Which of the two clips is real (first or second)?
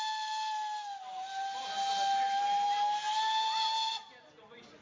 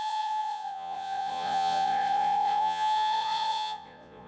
first